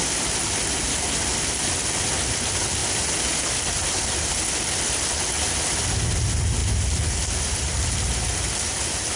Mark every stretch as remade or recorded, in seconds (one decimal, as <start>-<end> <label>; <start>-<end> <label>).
0.0-9.2 recorded